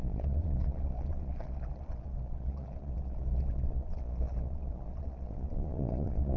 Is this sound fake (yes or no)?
yes